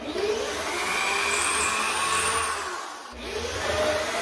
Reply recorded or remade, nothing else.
recorded